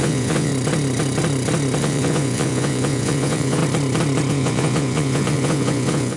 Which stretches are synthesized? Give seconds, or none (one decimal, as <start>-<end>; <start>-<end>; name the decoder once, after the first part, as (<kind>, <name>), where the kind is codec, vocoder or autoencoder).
0.0-0.5 (vocoder, Vocos); 1.8-3.6; 4.3-6.2